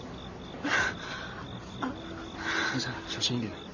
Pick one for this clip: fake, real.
real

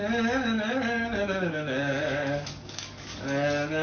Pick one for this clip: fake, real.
fake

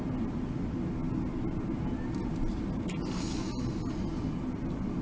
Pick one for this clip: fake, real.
real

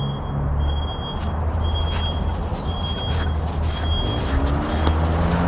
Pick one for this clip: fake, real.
real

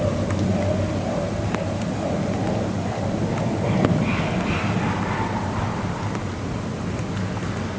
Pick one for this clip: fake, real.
real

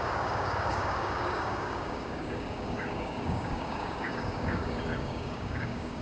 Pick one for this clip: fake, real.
fake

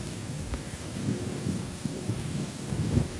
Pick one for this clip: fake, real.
fake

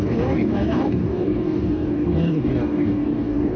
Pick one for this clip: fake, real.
fake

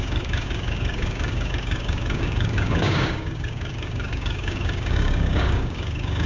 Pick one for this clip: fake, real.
fake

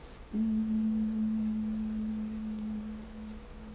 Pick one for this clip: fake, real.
fake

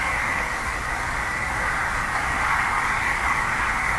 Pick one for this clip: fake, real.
fake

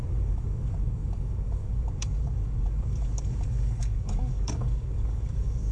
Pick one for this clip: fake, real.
fake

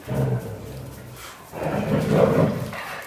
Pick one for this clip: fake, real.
real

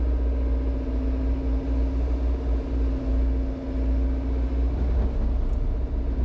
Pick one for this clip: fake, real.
real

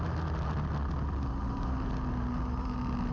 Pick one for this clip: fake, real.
real